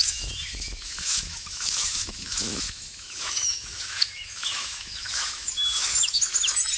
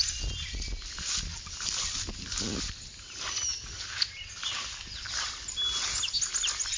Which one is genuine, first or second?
second